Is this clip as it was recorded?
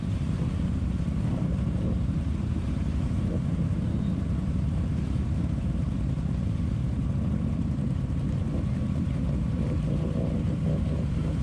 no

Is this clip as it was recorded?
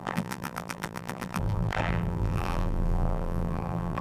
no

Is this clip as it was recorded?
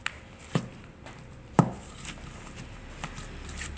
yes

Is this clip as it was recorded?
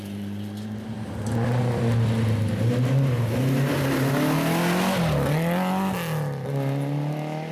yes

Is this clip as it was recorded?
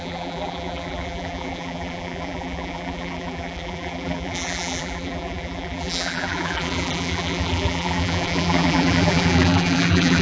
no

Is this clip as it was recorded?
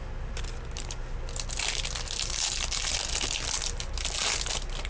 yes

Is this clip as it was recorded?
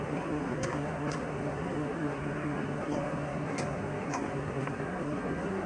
no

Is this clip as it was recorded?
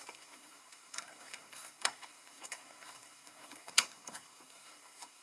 no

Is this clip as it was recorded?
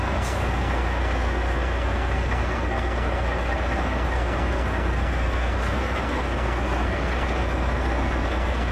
no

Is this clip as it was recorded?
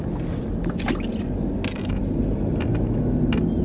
yes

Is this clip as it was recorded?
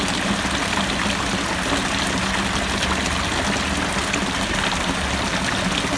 yes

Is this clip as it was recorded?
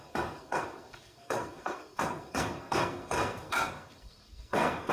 no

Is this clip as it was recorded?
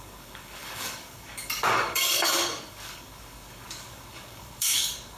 no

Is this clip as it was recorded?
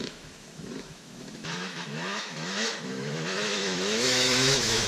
no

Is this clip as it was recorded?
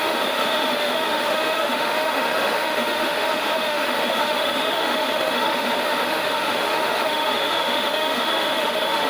no